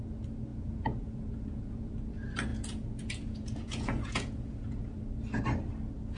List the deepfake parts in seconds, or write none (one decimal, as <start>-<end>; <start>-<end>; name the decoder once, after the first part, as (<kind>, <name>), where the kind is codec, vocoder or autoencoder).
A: 0.5-1.9 (vocoder, Vocos); 2.5-5.0